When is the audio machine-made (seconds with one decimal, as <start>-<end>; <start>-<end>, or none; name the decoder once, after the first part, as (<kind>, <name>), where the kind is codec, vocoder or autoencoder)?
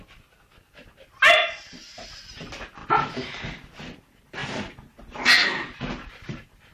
none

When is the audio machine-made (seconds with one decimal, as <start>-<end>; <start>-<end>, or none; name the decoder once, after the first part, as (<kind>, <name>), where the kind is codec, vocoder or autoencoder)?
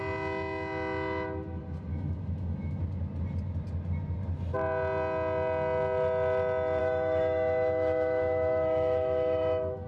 1.9-2.8 (autoencoder, DAC-VAE); 6.8-9.9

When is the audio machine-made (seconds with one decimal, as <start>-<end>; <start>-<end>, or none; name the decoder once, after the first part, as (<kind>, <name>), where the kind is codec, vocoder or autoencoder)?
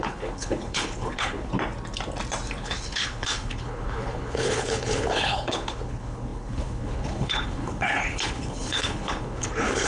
0.0-1.5 (codec, HILCodec); 2.6-9.9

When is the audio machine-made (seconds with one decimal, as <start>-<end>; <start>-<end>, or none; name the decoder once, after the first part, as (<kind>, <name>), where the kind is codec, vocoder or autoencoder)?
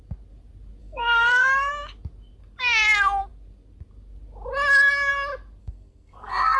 0.8-1.7 (codec, SNAC); 5.6-6.6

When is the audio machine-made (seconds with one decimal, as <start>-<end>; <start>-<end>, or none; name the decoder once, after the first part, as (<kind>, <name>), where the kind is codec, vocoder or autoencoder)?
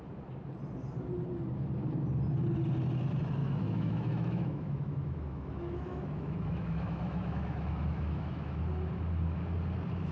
3.4-8.6 (autoencoder, DAC-VAE)